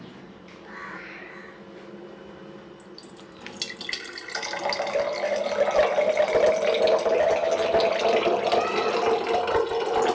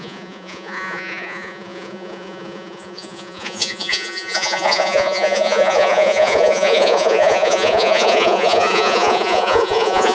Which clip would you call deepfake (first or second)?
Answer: second